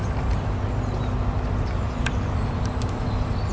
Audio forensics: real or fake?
real